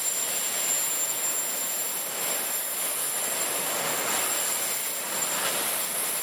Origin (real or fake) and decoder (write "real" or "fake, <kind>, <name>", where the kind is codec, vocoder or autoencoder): real